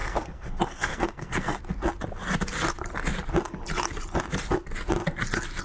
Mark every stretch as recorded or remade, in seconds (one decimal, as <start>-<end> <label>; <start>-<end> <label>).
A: 0.0-1.6 remade; 1.6-5.6 recorded